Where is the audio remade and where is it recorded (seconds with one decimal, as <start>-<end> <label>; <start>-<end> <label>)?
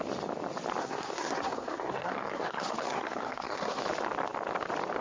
0.0-0.8 recorded; 0.8-3.8 remade; 3.8-5.0 recorded